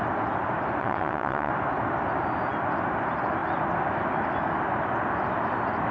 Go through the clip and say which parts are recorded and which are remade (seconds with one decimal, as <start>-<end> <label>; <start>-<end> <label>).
0.0-0.8 recorded; 0.8-1.5 remade; 1.5-5.9 recorded